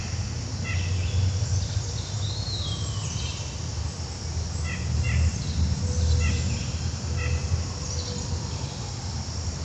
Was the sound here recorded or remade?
recorded